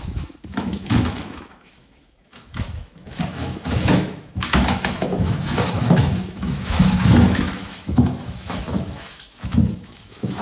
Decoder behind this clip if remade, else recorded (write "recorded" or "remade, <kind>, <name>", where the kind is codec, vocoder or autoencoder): remade, autoencoder, DAC-VAE